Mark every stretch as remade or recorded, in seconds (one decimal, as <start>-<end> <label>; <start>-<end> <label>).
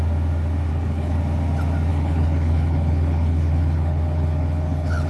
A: 0.0-0.7 recorded; 0.7-1.2 remade; 1.2-1.9 recorded; 1.9-5.1 remade